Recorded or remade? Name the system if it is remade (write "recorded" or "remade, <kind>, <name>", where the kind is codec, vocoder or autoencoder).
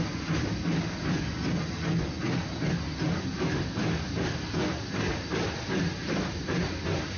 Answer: recorded